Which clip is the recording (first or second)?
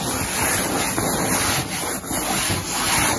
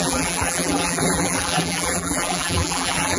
first